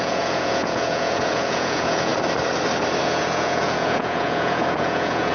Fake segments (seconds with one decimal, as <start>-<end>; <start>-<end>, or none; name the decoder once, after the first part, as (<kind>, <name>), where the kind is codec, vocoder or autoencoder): 0.0-2.1 (vocoder, Vocos); 3.0-5.3